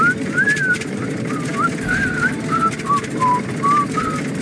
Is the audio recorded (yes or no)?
yes